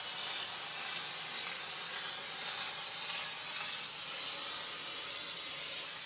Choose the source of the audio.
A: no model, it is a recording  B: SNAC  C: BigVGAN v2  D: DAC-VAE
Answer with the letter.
A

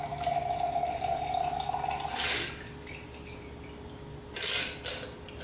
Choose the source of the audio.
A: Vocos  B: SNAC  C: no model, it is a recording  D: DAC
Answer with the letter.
C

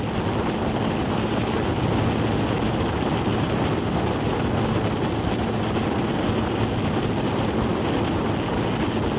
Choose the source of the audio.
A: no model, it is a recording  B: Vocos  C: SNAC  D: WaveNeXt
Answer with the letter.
A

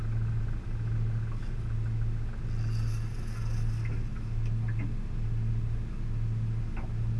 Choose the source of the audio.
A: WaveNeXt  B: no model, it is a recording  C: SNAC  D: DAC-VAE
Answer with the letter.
B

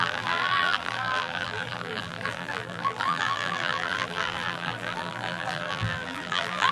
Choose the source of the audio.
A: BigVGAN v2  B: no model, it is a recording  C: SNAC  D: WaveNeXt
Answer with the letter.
A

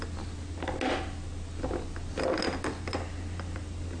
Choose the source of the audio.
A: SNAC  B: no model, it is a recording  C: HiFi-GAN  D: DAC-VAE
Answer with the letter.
B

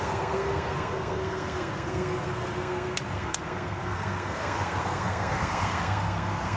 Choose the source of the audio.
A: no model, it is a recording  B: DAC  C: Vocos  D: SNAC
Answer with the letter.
D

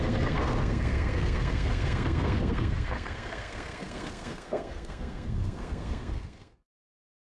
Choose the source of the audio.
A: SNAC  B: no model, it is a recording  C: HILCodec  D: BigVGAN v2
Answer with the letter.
A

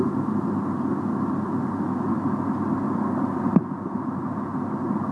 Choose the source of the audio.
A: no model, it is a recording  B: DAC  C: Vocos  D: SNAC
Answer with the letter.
A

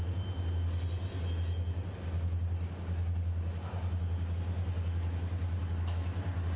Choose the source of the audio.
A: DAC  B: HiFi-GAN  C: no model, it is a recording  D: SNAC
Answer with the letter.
C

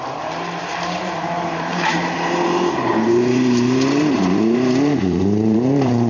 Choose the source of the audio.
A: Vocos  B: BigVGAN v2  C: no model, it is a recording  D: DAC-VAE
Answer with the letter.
B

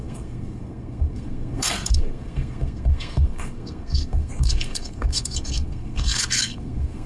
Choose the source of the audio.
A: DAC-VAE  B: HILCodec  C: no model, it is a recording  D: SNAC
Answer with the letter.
D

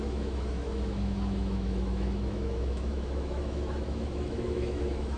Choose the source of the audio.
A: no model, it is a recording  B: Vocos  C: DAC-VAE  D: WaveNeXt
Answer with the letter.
C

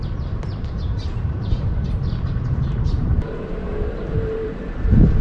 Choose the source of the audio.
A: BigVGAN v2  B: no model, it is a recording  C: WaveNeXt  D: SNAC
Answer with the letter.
A